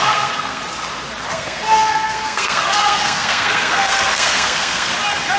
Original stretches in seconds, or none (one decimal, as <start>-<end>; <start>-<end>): 0.6-1.3; 4.9-5.4